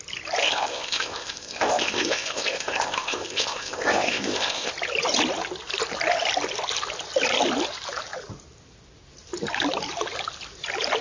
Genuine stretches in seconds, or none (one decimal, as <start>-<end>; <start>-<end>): 0.0-0.4; 4.7-11.0